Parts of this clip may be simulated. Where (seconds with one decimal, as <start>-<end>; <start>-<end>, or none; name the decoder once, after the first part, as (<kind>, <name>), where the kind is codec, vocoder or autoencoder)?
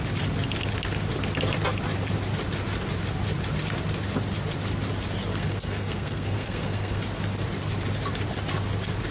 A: 5.3-7.0 (codec, SNAC)